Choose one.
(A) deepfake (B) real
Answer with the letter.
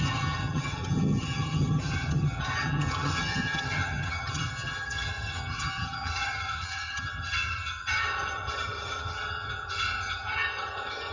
A